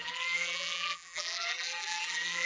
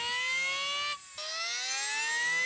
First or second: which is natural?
second